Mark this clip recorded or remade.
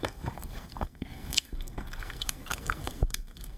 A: remade